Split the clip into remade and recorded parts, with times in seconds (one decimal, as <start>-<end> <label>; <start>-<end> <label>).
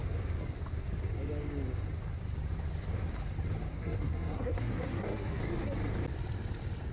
0.0-3.7 recorded; 3.7-5.4 remade; 5.4-6.9 recorded